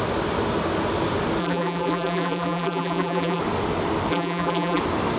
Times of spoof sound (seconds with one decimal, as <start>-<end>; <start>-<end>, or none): 1.4-3.4; 4.1-4.8